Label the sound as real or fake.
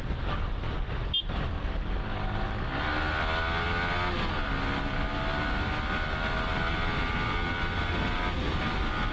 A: real